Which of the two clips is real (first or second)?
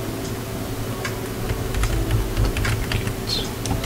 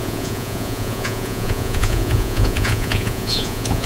first